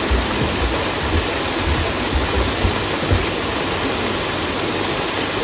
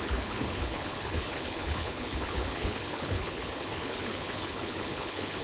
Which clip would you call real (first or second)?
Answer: first